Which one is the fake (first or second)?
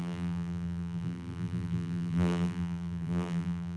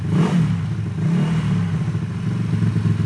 first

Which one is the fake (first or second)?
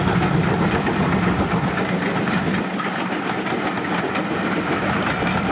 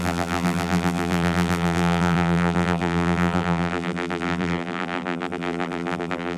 second